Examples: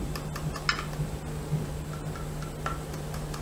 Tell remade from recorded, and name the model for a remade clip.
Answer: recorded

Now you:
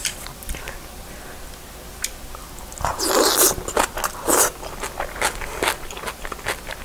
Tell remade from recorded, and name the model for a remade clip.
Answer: recorded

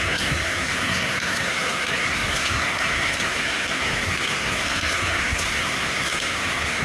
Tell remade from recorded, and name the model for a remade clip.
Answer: remade, codec, SNAC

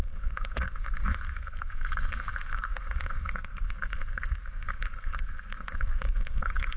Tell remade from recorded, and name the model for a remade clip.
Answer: remade, codec, SNAC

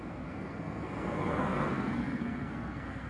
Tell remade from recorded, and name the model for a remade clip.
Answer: remade, codec, SNAC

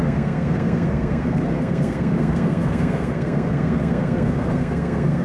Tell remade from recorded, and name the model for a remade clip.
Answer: remade, codec, SNAC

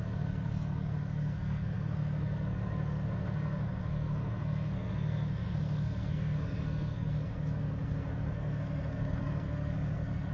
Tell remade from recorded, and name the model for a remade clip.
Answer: remade, codec, SNAC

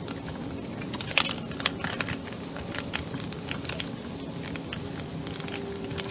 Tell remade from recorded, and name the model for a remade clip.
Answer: recorded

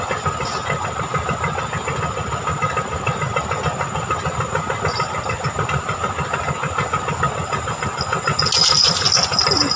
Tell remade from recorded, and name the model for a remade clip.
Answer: recorded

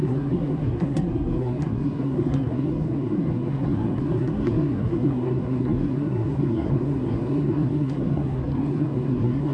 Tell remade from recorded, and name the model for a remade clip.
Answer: remade, codec, SNAC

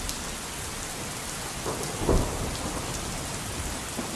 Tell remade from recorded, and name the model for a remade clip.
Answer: recorded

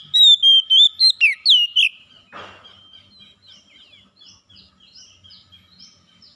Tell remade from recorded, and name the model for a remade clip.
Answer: recorded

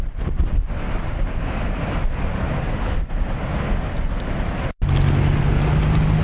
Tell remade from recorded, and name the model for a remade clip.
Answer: recorded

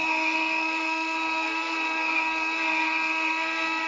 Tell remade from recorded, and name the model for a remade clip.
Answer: remade, codec, SNAC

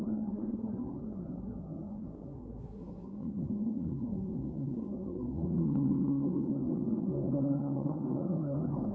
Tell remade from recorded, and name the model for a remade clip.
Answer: remade, codec, SNAC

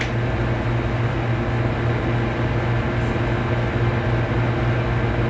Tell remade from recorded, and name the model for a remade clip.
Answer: recorded